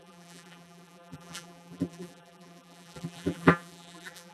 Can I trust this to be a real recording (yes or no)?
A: no